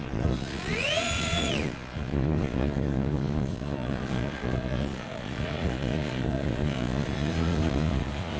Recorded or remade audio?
remade